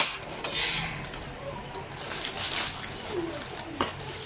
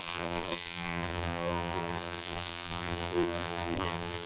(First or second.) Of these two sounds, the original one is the first